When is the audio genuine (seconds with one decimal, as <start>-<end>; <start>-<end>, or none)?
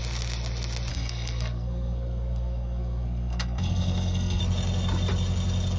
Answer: 0.0-0.9; 4.4-5.8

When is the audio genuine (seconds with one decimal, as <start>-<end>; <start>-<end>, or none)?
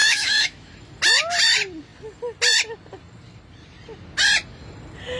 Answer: 0.7-5.2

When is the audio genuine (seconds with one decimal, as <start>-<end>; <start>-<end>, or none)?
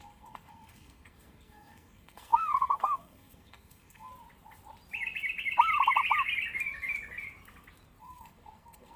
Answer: 4.1-8.0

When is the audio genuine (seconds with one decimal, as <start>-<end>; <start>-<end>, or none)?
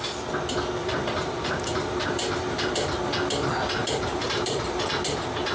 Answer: 0.0-0.8; 2.9-3.8; 4.9-5.5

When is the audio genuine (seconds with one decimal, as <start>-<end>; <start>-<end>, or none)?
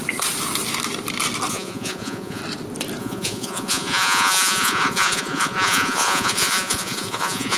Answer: 0.0-1.5; 2.4-3.0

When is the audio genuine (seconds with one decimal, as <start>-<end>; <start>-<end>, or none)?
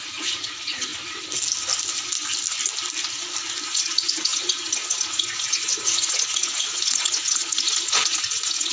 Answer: 0.9-3.7